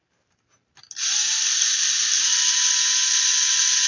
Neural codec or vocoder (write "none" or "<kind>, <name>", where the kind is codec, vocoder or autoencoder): none